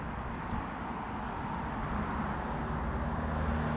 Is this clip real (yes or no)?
yes